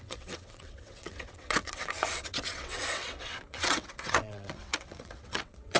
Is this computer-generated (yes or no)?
yes